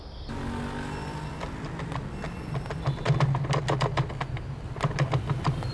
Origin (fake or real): real